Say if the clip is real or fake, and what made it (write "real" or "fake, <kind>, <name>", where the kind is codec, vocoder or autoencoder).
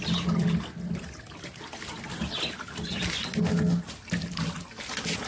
real